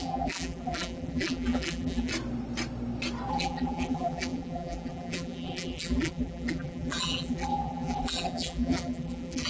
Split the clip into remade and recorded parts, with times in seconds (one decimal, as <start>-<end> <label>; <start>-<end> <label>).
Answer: 0.0-2.1 remade; 2.1-3.3 recorded; 3.3-9.5 remade